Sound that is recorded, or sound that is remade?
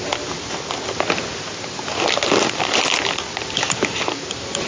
recorded